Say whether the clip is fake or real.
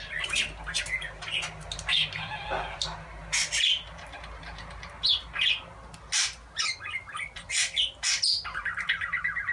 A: real